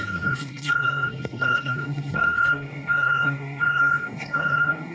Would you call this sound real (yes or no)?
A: no